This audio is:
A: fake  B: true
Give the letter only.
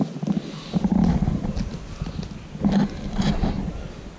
B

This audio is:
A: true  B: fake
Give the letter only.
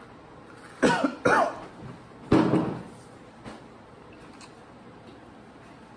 A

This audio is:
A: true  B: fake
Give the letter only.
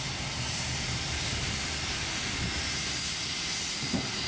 A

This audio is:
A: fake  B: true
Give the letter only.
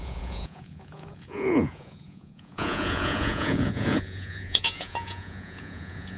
A